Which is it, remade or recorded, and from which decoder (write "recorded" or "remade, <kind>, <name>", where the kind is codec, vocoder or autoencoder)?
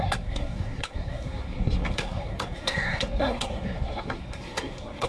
remade, codec, SNAC